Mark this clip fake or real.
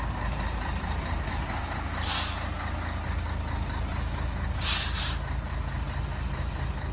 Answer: real